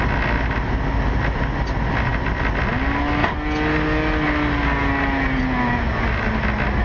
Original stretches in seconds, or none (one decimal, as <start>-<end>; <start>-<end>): 0.0-6.8

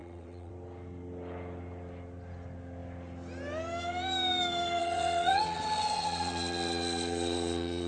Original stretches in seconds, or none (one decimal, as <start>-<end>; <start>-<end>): 0.5-4.8

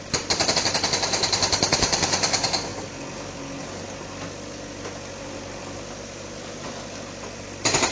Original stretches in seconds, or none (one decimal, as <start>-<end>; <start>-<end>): 0.0-7.9